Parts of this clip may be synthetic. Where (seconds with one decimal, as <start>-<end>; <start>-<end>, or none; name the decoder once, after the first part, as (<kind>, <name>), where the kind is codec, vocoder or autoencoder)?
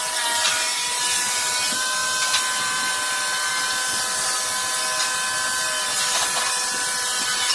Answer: none